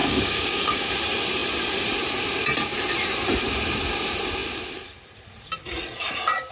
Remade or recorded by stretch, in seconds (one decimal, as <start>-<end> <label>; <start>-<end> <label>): 0.0-0.9 remade; 0.9-6.5 recorded